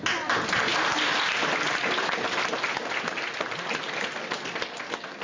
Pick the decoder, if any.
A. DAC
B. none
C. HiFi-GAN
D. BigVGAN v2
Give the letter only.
B